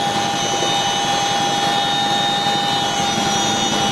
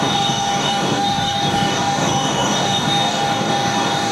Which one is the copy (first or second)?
second